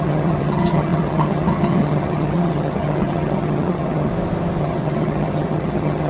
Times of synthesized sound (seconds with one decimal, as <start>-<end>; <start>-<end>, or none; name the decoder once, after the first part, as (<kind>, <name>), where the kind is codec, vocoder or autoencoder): 0.0-4.1 (vocoder, HiFi-GAN); 4.6-6.1